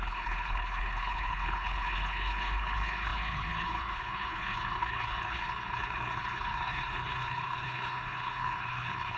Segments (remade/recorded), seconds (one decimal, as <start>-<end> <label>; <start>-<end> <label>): 0.0-9.2 remade